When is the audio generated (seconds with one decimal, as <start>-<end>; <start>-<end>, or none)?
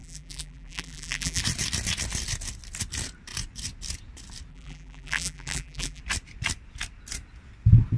0.0-1.4; 4.5-6.0